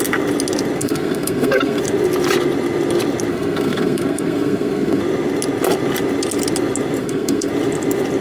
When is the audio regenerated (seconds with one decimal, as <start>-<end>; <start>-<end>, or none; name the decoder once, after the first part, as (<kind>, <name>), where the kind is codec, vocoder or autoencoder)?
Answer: 0.8-1.8 (codec, SNAC); 3.3-5.0; 7.0-7.5